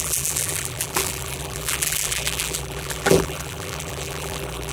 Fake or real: fake